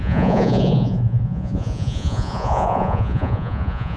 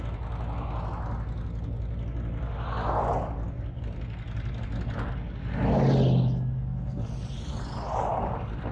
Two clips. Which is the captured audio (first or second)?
second